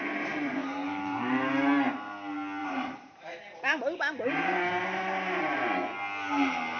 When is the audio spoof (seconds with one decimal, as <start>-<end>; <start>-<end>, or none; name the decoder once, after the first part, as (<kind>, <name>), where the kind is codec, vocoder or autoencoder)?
0.6-1.5 (vocoder, BigVGAN v2); 2.6-3.8